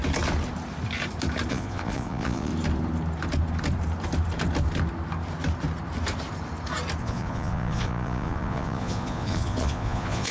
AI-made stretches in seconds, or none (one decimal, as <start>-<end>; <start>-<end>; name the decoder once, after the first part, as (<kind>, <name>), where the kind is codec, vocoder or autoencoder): 1.5-2.5 (vocoder, Vocos); 7.0-10.3